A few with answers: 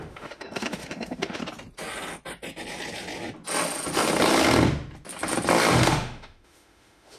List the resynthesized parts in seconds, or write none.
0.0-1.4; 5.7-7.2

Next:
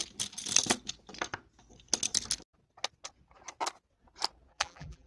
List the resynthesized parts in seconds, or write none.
4.5-5.1

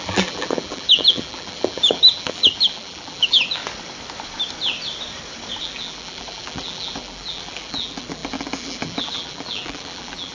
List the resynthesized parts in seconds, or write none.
0.0-3.6; 5.6-10.3

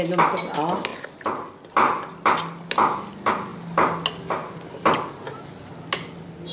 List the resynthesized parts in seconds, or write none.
none

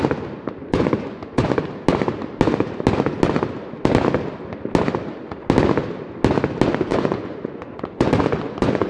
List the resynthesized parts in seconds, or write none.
0.6-1.7; 6.9-8.9